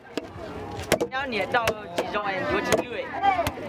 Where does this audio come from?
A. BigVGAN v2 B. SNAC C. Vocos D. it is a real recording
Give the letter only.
D